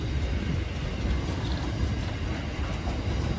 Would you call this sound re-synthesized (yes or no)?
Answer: no